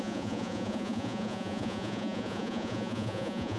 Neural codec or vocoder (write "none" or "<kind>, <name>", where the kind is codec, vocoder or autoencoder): vocoder, Vocos